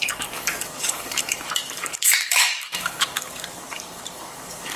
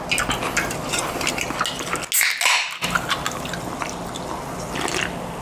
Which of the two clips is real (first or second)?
second